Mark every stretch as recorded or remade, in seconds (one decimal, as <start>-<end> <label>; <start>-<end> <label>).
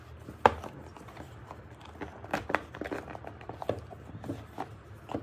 0.0-0.9 recorded; 0.9-1.6 remade; 1.6-2.3 recorded; 2.3-4.1 remade; 4.1-5.2 recorded